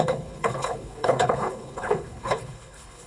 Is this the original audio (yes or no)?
no